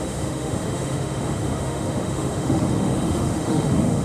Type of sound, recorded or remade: remade